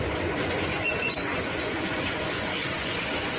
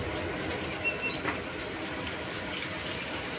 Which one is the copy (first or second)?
first